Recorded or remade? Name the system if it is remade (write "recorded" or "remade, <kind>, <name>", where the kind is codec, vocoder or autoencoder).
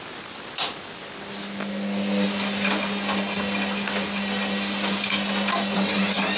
recorded